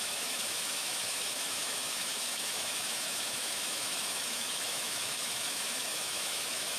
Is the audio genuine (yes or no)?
no